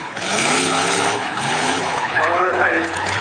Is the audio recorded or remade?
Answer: remade